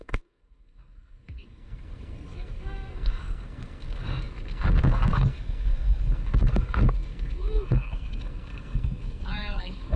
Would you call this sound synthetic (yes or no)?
yes